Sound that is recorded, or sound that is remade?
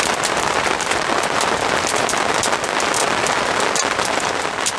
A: remade